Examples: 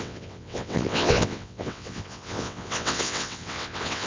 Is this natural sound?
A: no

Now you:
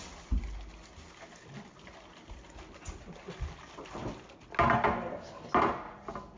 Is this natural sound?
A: yes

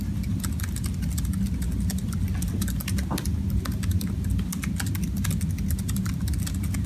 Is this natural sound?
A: yes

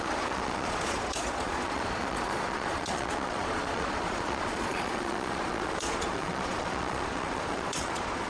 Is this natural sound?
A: no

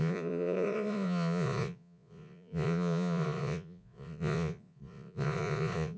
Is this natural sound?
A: no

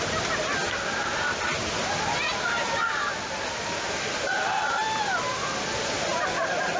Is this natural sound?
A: yes